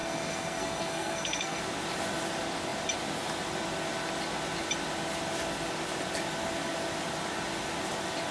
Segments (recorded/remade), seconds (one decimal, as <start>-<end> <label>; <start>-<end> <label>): 0.0-1.6 remade; 1.6-8.3 recorded